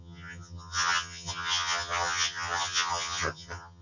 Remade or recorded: remade